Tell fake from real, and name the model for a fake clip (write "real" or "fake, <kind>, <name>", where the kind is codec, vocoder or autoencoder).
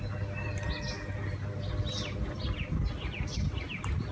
real